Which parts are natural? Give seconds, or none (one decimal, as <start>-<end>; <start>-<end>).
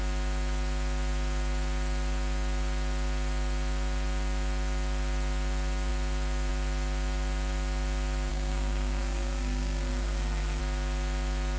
0.0-8.3; 10.6-11.6